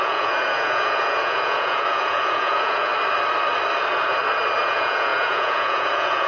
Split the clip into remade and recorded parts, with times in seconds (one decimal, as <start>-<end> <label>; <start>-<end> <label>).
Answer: 0.0-2.9 remade; 2.9-4.6 recorded; 4.6-6.3 remade